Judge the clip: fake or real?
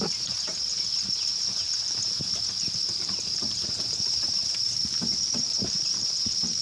fake